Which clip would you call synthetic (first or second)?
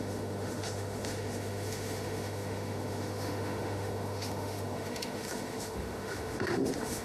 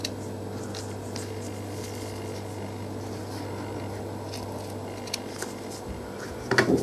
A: first